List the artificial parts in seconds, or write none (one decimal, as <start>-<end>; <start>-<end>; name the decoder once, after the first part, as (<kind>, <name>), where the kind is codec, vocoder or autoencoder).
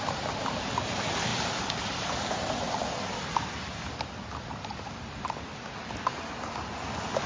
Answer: none